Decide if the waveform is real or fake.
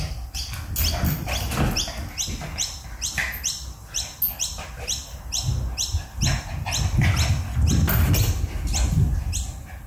real